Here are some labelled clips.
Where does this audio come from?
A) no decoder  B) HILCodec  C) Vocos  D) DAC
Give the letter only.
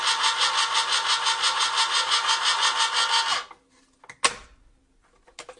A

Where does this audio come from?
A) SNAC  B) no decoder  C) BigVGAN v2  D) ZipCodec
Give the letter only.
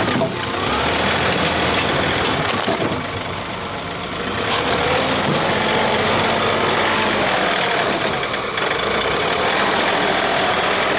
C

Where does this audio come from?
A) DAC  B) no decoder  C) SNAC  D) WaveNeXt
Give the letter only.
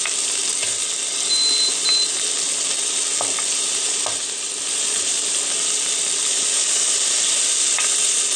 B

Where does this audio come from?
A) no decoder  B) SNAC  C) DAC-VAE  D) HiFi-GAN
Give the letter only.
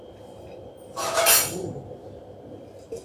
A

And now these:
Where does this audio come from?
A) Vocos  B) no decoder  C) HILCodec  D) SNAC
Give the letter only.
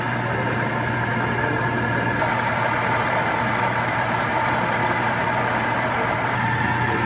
B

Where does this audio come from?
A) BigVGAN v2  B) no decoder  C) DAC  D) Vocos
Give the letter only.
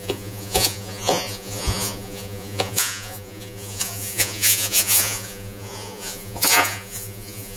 D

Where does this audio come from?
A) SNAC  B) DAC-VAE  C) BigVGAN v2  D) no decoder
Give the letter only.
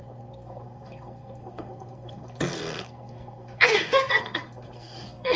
A